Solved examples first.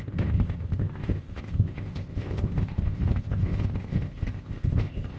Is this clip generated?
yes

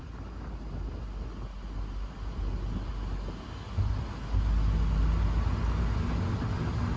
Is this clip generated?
no